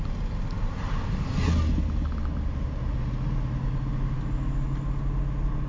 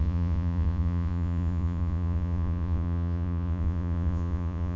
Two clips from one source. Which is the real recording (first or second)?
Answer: first